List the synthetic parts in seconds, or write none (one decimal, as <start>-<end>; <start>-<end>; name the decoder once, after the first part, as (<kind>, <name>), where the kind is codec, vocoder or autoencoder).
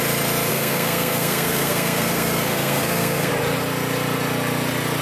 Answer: 0.5-3.3 (codec, SNAC)